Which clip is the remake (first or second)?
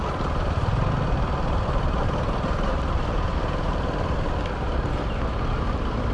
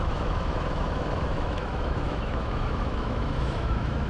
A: second